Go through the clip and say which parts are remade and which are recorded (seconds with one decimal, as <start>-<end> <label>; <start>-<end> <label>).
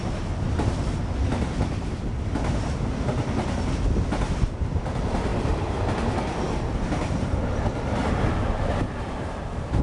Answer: 0.0-9.8 recorded